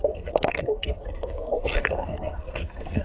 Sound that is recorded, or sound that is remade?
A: remade